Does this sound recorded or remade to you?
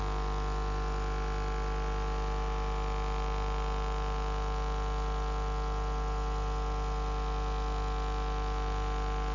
recorded